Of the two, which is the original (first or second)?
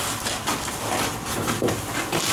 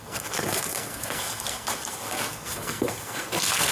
first